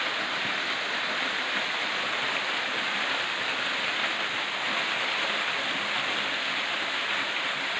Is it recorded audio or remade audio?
recorded